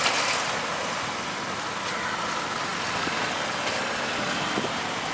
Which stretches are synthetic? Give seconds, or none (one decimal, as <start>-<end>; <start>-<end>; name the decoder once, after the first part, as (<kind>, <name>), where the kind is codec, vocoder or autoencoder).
none